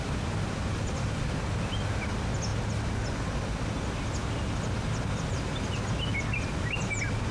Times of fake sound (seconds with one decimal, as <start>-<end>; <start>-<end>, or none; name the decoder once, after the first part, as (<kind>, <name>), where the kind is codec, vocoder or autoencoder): none